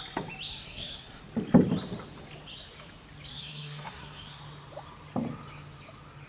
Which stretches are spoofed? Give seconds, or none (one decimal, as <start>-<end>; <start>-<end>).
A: 0.5-1.2; 3.3-4.4